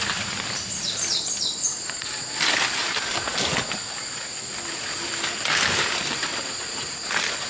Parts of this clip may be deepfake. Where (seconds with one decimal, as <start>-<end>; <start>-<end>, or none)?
none